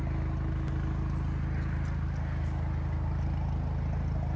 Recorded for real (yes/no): yes